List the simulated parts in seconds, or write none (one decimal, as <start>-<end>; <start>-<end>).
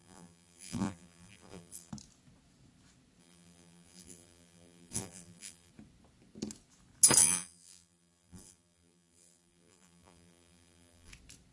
0.0-1.9; 3.2-5.7; 7.2-11.1